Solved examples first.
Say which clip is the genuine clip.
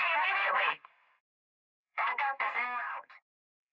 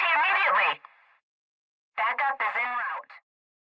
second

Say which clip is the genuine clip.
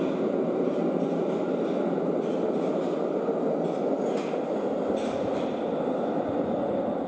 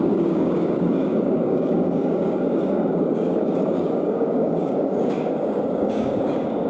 first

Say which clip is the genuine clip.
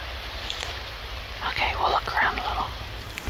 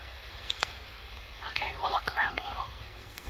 first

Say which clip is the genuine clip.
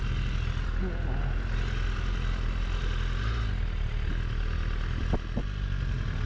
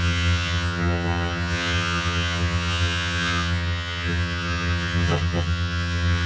first